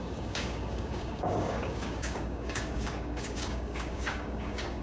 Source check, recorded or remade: remade